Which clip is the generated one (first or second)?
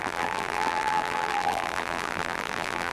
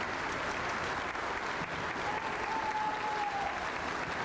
first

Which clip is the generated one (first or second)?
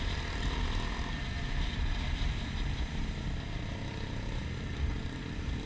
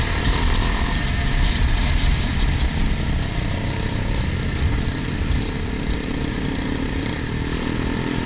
second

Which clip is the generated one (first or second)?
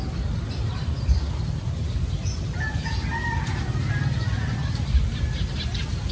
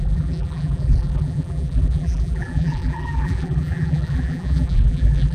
second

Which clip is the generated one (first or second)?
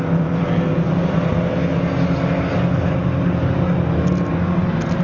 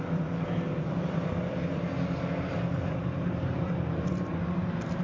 second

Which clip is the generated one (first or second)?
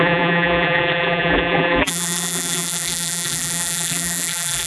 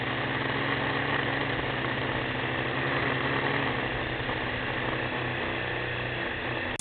first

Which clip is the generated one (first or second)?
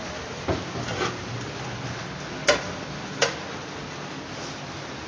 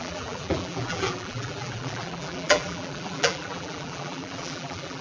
second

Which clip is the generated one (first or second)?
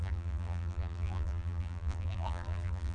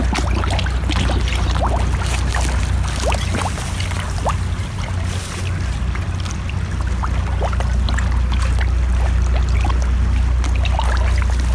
first